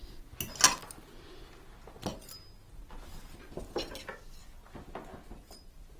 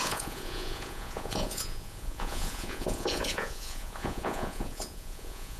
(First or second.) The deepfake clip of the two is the second